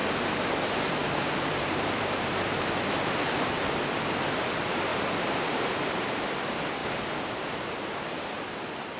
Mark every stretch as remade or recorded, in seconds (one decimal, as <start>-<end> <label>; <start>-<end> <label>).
0.0-3.8 remade; 3.8-4.9 recorded; 4.9-6.2 remade; 6.2-6.8 recorded; 6.8-7.7 remade; 7.7-9.0 recorded